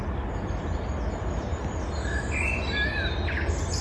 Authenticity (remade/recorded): recorded